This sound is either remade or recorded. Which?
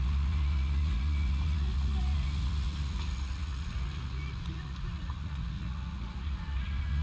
remade